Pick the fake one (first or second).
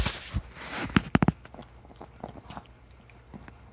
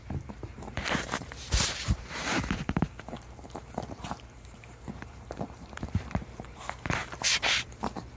second